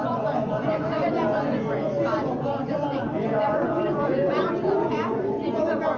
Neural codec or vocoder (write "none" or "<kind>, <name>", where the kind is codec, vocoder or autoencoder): vocoder, Vocos